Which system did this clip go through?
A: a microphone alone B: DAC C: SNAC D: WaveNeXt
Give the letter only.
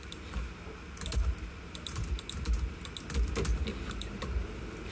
A